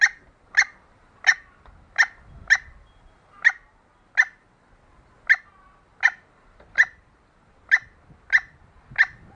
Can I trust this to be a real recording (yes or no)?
yes